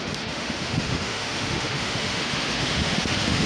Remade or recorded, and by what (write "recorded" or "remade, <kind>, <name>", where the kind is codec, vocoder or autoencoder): remade, autoencoder, DAC-VAE